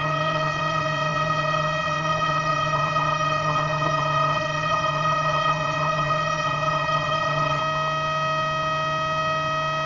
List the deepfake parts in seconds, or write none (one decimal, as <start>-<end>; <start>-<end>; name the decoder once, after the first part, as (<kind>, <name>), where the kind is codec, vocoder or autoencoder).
0.0-7.6 (vocoder, HiFi-GAN)